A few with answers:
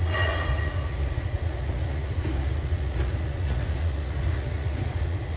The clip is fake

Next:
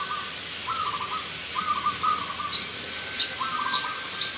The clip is real